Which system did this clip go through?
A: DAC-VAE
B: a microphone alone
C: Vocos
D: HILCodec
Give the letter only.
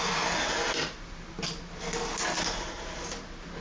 B